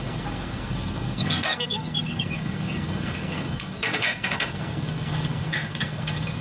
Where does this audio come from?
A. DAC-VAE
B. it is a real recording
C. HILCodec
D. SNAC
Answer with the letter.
D